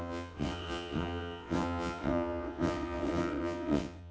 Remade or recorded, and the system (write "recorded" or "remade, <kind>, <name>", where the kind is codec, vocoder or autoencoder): remade, vocoder, WaveNeXt